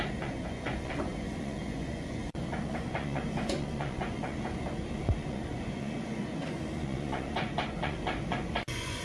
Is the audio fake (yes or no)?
yes